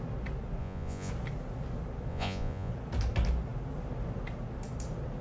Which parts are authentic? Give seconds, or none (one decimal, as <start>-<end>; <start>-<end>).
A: 0.0-0.6; 1.1-2.1; 2.7-5.2